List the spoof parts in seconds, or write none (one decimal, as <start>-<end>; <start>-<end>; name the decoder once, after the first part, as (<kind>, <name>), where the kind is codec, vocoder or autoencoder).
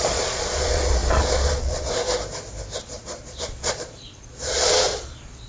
0.0-2.0 (vocoder, Vocos); 2.8-5.5